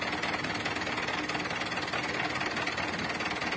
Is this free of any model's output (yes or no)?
yes